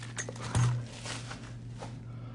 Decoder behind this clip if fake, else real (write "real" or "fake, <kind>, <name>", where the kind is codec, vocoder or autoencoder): real